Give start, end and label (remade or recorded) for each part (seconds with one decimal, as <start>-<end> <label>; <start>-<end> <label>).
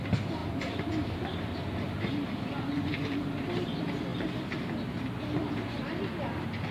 0.0-0.4 recorded; 0.4-3.4 remade; 3.4-6.7 recorded